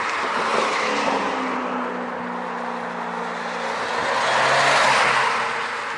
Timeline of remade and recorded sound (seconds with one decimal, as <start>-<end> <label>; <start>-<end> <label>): 0.0-6.0 recorded